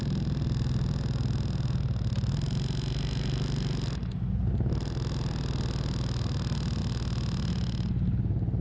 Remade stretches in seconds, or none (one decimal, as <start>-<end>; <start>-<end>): none